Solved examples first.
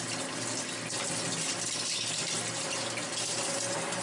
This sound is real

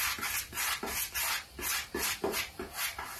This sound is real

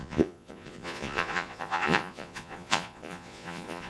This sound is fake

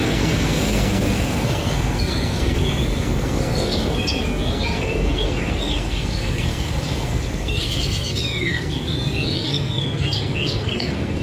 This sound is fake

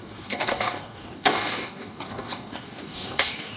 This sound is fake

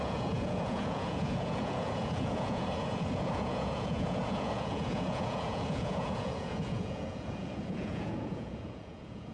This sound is fake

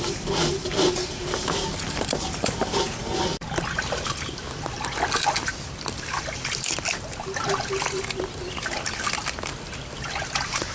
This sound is real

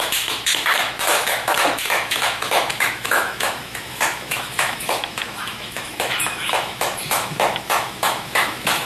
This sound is fake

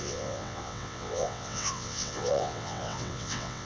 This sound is fake